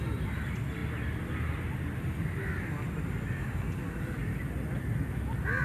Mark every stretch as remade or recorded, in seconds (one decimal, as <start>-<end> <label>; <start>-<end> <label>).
0.0-5.6 recorded